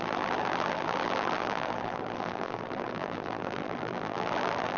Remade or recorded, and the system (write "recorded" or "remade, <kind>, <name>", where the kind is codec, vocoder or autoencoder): remade, vocoder, BigVGAN v2